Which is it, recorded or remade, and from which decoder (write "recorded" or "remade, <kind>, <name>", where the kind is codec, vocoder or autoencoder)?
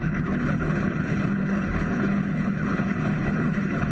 remade, codec, HILCodec